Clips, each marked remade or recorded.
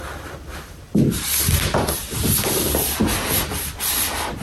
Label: recorded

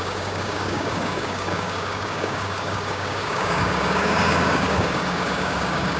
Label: remade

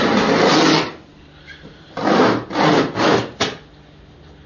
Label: recorded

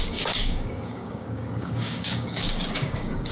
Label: remade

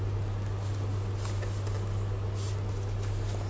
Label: recorded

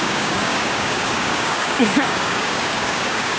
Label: remade